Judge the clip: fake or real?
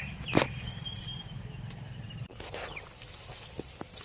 real